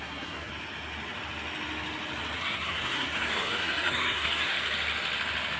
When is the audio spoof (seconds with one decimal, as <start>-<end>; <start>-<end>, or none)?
0.0-0.5; 2.4-4.6